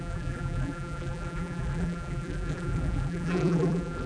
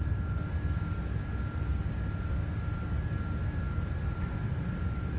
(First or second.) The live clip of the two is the second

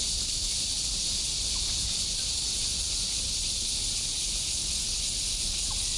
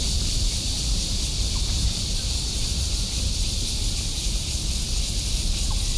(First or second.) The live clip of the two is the first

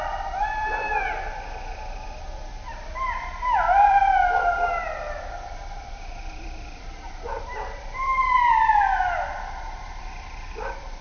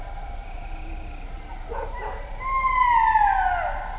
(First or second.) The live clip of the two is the second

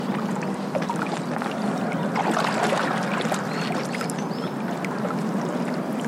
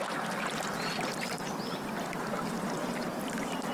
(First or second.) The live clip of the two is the first